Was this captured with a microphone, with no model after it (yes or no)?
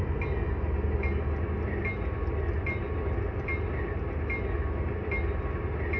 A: yes